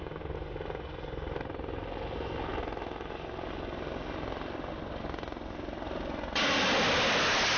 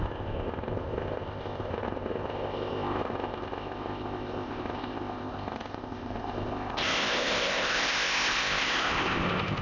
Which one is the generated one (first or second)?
second